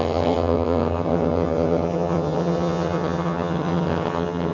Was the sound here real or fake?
fake